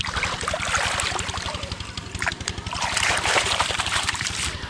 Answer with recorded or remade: remade